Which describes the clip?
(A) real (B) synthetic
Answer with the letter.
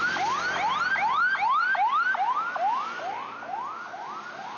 A